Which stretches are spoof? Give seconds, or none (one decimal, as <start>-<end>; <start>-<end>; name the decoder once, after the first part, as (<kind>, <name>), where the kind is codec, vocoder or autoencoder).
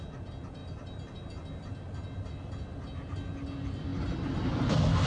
none